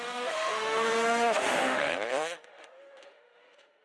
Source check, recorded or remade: remade